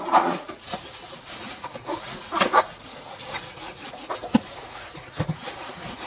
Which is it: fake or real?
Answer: fake